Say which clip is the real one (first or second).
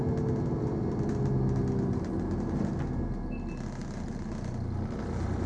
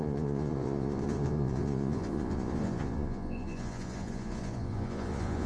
first